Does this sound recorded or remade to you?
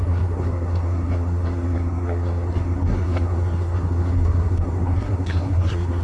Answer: remade